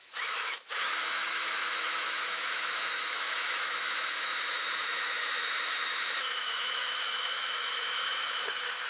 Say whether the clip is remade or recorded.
remade